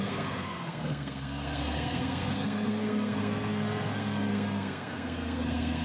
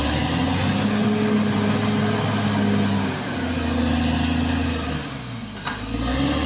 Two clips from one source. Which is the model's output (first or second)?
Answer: first